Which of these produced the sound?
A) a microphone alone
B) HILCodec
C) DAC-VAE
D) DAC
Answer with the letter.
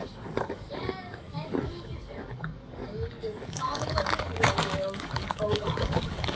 D